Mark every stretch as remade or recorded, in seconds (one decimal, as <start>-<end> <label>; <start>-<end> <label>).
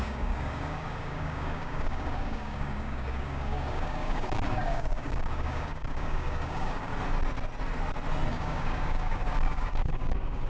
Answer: 0.0-6.9 remade; 6.9-8.3 recorded; 8.3-10.5 remade